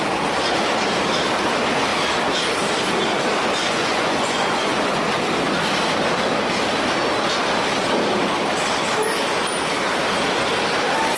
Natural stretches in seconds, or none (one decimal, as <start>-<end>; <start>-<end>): 0.0-3.6; 5.0-11.2